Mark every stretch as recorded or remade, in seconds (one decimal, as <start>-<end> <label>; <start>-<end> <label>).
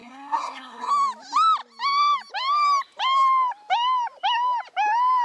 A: 0.0-0.9 remade; 0.9-5.2 recorded